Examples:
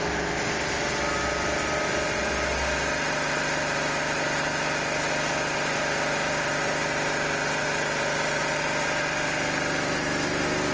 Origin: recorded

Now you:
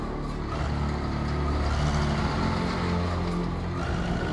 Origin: recorded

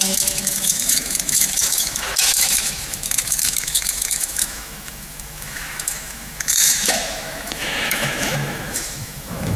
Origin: remade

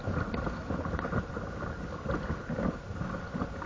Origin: recorded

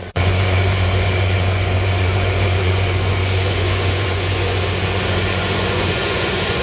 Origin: remade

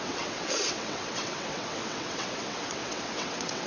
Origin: remade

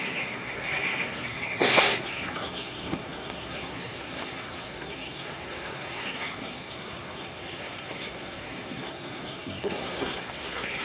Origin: remade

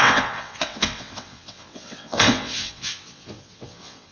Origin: remade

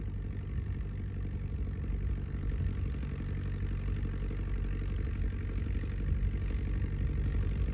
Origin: recorded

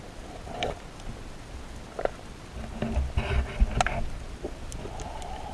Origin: recorded